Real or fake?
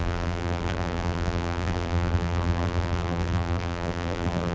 fake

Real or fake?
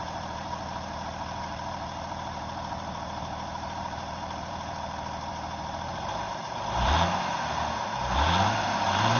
fake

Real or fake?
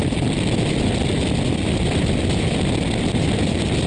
fake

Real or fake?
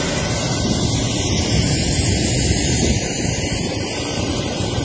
fake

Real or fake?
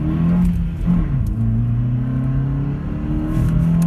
real